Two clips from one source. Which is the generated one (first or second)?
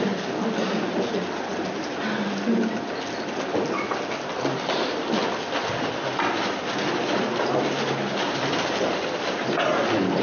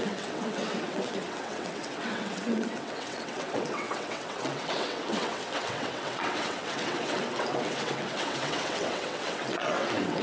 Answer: second